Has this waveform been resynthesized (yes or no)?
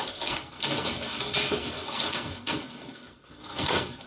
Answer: yes